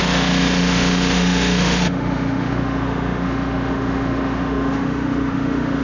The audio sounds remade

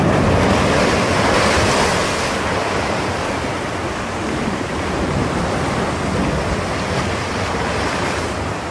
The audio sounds recorded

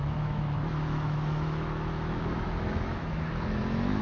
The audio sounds remade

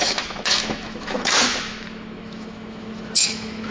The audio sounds remade